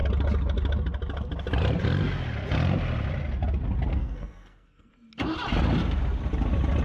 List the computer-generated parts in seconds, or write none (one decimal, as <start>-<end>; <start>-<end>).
3.9-4.9